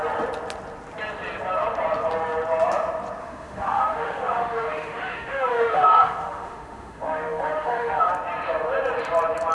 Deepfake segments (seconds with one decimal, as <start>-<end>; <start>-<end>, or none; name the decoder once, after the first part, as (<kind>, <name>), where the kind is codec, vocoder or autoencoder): 3.2-8.1 (autoencoder, DAC-VAE)